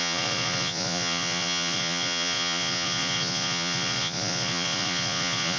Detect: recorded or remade remade